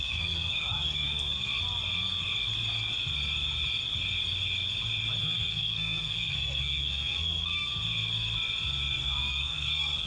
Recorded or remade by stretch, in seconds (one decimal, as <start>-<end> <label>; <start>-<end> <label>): 0.0-1.5 remade; 1.5-5.2 recorded; 5.2-7.7 remade; 7.7-8.9 recorded; 8.9-10.1 remade